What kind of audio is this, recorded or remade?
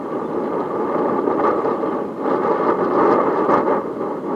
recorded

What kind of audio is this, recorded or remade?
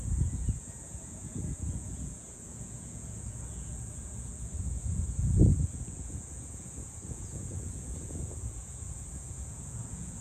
remade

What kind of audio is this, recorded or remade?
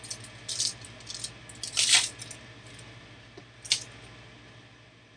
recorded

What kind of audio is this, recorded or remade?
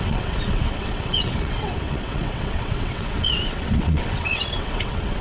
remade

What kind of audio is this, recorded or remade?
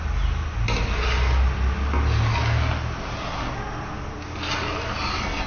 recorded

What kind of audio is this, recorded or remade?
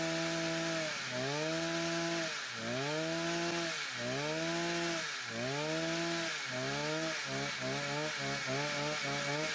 recorded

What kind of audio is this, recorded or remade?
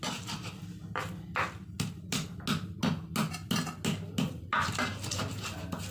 recorded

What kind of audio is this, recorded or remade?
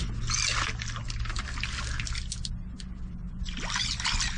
recorded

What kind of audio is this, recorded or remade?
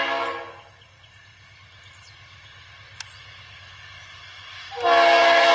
recorded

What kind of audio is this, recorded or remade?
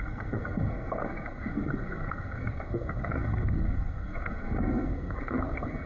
remade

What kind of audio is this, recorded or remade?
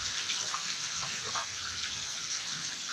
remade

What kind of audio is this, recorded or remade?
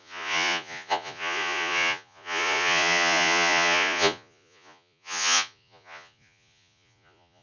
remade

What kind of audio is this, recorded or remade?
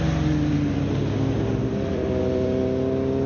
recorded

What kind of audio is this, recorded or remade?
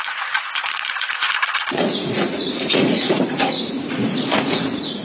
remade